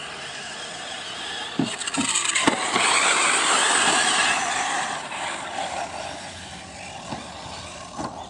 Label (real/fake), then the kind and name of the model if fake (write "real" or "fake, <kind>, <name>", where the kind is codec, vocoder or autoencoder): real